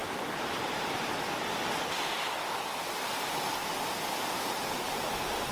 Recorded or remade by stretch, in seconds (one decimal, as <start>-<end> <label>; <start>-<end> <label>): 0.0-5.5 recorded